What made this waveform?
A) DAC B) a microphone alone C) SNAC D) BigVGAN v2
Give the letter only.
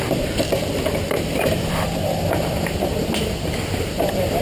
D